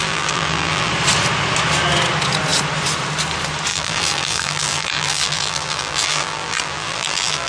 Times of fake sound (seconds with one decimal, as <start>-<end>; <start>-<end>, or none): 0.0-0.9; 3.7-7.5